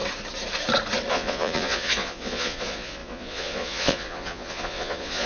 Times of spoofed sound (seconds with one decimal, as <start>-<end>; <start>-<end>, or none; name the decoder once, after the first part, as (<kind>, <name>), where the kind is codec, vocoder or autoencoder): 1.1-5.3 (vocoder, Vocos)